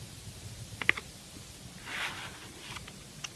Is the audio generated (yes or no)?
no